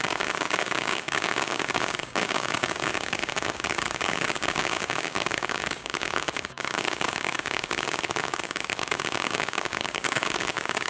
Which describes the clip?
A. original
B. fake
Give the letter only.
B